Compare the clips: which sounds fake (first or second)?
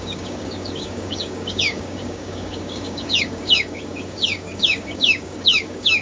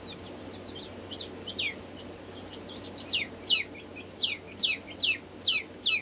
first